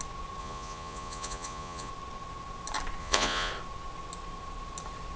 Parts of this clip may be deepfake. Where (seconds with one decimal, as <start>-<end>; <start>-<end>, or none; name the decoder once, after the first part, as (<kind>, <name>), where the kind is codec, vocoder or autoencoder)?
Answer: 0.4-1.9 (vocoder, Vocos); 3.0-3.5